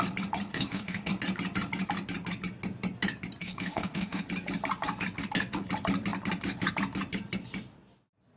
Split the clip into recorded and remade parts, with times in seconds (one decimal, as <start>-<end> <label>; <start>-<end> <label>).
0.0-0.5 recorded; 0.5-1.1 remade; 1.1-3.4 recorded; 3.4-4.2 remade; 4.2-8.4 recorded